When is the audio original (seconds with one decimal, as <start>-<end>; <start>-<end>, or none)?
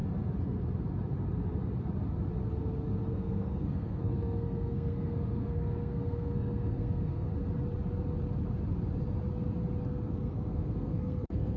0.0-3.1; 7.3-9.8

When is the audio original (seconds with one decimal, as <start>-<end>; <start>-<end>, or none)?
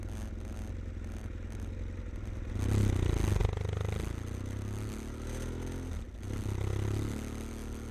0.0-7.9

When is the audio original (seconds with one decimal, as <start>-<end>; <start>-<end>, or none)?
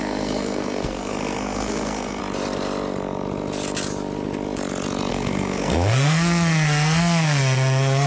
2.2-5.1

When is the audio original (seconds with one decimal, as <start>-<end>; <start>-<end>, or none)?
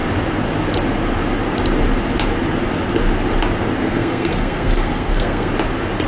0.0-3.8; 5.5-6.1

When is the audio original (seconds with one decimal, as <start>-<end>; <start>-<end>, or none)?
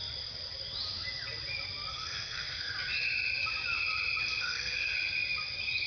0.0-1.9; 2.7-4.4; 4.9-5.9